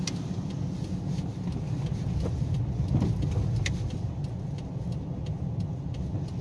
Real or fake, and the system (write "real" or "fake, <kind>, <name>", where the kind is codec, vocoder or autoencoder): real